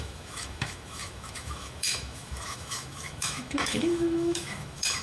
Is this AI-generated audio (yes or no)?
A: yes